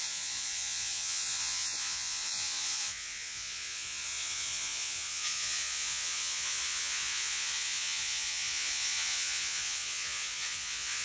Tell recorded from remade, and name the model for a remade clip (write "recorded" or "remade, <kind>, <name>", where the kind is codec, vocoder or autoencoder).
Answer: remade, vocoder, Vocos